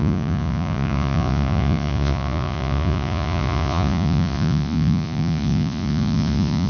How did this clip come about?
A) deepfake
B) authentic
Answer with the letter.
A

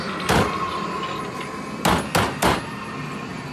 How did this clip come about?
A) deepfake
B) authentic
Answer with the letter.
B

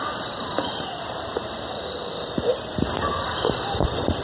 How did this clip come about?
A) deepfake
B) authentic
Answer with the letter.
B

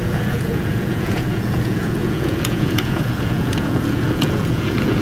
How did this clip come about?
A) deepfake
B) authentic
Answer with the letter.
A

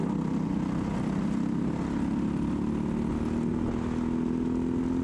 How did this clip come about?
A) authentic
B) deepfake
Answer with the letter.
A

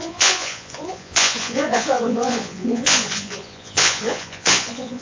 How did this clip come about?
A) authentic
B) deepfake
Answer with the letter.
B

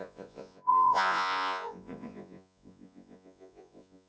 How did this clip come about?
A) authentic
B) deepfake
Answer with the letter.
B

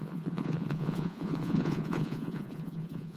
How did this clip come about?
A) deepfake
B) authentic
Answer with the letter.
A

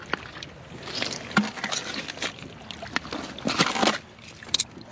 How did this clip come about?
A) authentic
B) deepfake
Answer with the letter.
A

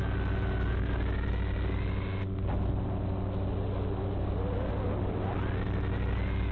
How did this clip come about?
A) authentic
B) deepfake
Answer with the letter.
A